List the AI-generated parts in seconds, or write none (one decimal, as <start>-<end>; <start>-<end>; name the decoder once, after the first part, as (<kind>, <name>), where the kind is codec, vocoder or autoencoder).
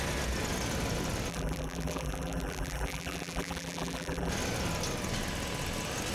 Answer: 1.3-4.3 (vocoder, BigVGAN v2)